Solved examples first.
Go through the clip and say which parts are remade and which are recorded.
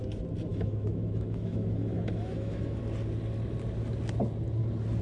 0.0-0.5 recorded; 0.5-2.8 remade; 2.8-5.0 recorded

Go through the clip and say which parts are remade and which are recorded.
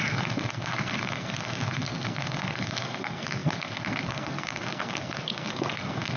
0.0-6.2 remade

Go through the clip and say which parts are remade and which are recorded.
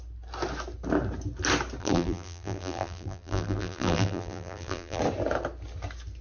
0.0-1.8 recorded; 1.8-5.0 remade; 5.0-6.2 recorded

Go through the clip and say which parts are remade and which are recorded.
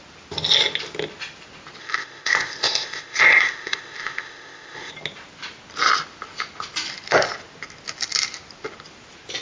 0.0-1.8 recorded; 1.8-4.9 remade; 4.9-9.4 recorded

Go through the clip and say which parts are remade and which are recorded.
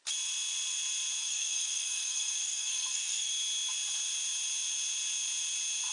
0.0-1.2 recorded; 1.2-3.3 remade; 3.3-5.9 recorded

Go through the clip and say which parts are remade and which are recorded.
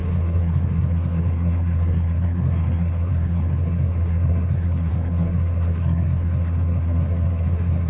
0.0-7.9 remade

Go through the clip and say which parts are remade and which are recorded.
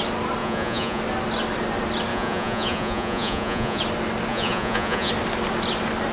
0.0-0.4 recorded; 0.4-1.0 remade; 1.0-2.1 recorded; 2.1-3.8 remade; 3.8-4.3 recorded; 4.3-5.1 remade; 5.1-6.1 recorded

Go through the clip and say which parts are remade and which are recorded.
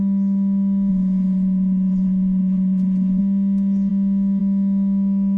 0.0-0.9 recorded; 0.9-3.2 remade; 3.2-5.4 recorded